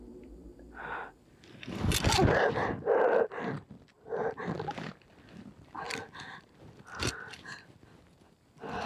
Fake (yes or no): no